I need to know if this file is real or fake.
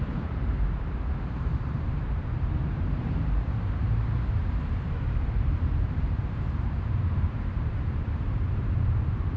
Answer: fake